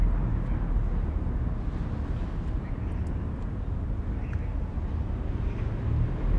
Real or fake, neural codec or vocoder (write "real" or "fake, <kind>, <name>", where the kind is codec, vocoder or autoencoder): real